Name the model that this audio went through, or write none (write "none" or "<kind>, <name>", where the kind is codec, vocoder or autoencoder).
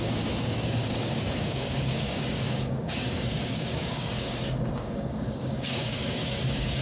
codec, DAC